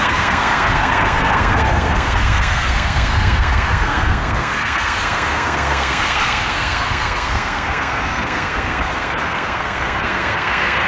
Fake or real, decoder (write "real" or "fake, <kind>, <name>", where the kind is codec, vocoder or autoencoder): fake, codec, SNAC